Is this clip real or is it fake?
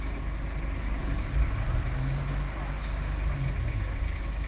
real